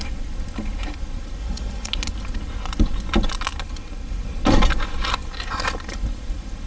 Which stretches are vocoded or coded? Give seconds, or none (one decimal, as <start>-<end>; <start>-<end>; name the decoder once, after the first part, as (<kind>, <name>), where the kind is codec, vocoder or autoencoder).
1.4-1.9 (vocoder, Vocos)

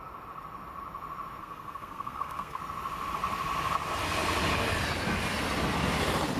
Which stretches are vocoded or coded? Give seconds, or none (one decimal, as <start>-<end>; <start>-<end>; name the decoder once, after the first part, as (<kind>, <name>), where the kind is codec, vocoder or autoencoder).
1.4-2.6 (codec, SNAC)

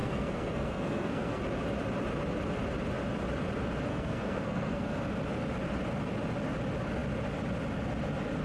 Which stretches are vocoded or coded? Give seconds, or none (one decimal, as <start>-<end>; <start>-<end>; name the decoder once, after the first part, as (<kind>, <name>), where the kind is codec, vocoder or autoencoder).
0.0-1.4 (codec, SNAC); 3.9-5.0

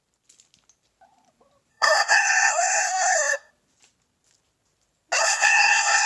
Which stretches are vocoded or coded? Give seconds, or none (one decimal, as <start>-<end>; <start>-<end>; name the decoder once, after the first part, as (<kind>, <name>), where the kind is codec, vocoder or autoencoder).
1.7-3.5 (codec, SNAC); 5.2-6.1

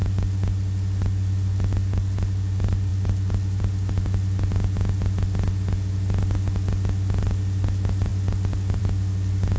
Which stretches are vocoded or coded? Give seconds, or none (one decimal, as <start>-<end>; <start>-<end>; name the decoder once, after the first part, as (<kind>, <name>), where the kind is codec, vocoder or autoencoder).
none

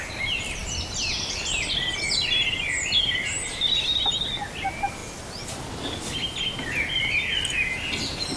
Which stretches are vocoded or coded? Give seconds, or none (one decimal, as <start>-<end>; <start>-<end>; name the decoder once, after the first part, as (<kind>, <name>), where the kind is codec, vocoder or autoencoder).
none

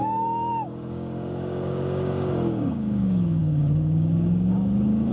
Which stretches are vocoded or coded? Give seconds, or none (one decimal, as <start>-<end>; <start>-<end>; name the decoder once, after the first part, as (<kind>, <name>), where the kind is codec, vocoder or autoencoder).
0.0-5.1 (codec, DAC)

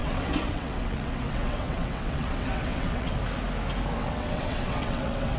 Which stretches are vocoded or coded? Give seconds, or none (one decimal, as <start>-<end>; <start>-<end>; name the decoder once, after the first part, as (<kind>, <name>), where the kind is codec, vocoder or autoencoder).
0.0-3.2 (vocoder, WaveNeXt); 4.0-5.4